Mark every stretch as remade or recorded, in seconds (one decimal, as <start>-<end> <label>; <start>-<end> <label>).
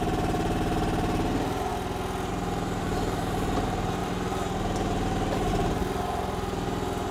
0.0-1.7 remade; 1.7-2.3 recorded; 2.3-7.1 remade